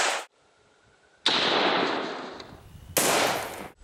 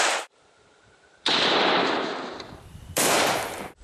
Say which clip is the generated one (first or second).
second